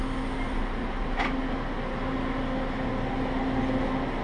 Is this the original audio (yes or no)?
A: yes